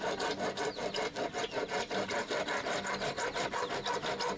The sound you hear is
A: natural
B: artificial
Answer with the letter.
A